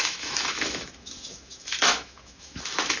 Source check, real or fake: fake